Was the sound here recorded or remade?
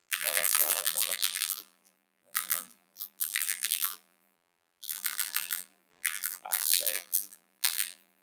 remade